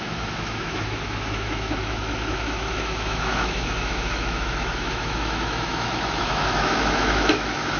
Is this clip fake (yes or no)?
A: yes